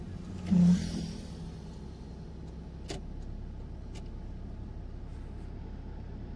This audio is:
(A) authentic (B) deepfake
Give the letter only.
A